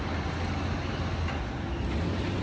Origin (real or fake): real